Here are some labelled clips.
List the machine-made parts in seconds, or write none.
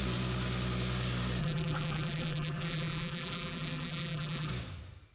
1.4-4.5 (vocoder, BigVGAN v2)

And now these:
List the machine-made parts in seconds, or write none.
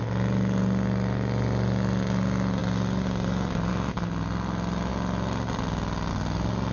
none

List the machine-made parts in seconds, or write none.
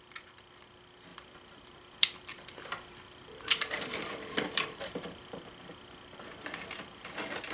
1.1-5.5 (vocoder, BigVGAN v2)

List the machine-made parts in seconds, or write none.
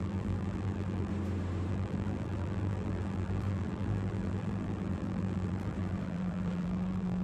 0.0-1.1 (vocoder, BigVGAN v2); 1.7-7.2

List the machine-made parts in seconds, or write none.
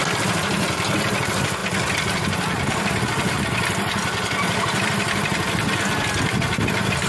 none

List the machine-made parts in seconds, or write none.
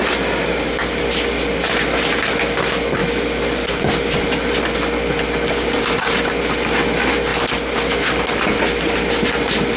none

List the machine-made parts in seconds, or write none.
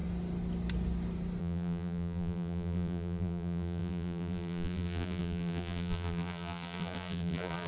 1.4-7.7 (vocoder, BigVGAN v2)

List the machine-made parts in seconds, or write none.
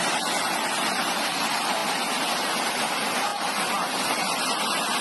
none